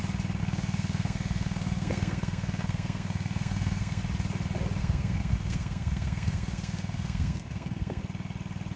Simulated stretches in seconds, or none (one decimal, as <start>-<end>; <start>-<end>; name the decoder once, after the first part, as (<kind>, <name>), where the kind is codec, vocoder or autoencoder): 0.4-4.0 (codec, SNAC); 4.8-8.0